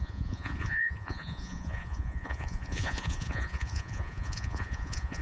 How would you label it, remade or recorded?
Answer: remade